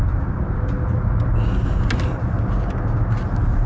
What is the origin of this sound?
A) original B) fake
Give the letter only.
A